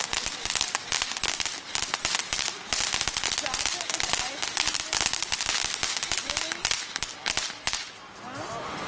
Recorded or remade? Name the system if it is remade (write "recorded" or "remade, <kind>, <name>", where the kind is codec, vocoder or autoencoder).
recorded